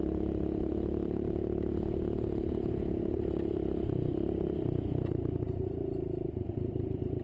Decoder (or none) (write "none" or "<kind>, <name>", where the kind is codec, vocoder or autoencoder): vocoder, BigVGAN v2